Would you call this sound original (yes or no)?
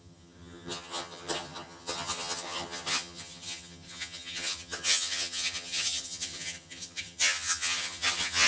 no